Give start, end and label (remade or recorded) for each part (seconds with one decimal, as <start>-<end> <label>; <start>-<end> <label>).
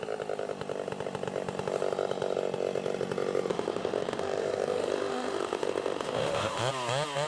0.0-3.5 recorded; 3.5-6.7 remade; 6.7-7.3 recorded